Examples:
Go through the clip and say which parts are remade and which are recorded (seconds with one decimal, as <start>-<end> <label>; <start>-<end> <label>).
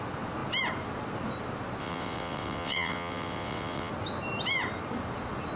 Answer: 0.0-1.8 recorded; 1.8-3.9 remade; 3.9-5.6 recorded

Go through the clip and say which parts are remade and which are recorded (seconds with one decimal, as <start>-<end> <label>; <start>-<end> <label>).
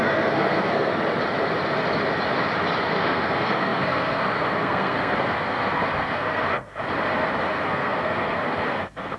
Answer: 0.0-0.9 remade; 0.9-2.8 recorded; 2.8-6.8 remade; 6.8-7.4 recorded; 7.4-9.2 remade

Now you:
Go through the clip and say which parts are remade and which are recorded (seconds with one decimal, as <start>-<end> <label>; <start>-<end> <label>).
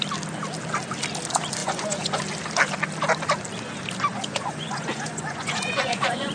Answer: 0.0-1.6 recorded; 1.6-2.2 remade; 2.2-4.1 recorded; 4.1-6.3 remade